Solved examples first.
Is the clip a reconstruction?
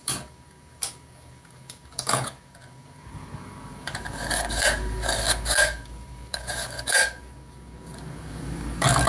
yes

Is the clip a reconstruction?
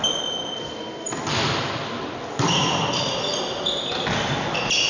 no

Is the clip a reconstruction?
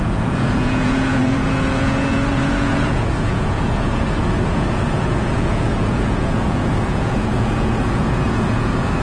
yes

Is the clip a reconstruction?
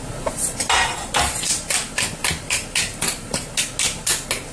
no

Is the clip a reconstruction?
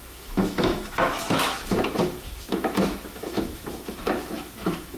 yes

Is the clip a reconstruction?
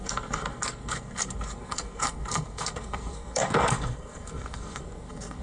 yes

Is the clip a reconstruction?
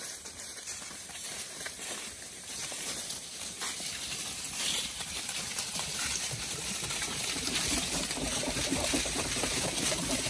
yes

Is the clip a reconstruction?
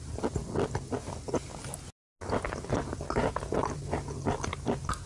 no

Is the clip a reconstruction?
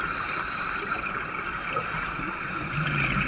no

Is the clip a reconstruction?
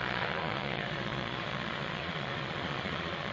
yes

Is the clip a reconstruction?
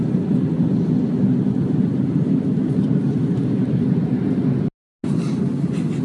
no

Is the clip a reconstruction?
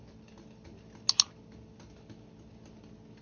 no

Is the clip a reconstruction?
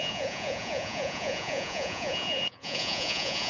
yes